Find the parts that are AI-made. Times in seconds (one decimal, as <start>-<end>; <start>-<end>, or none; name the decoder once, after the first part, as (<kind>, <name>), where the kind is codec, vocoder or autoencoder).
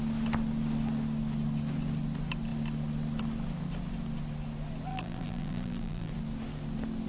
4.9-6.1 (vocoder, BigVGAN v2)